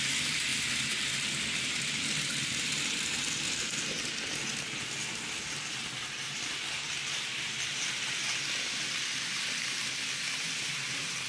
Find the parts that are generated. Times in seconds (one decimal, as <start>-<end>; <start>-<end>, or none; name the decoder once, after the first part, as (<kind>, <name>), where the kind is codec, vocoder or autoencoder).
none